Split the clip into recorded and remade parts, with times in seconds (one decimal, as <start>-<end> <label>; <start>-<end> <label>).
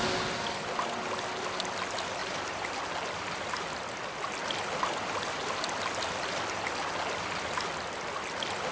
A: 0.0-2.2 recorded; 2.2-2.8 remade; 2.8-8.7 recorded